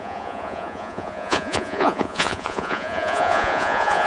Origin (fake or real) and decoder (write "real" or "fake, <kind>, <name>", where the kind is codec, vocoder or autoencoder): fake, vocoder, Vocos